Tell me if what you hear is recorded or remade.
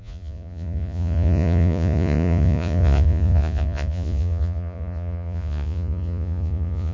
remade